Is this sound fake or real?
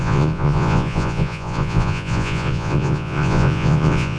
fake